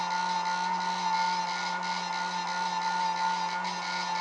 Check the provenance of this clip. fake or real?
real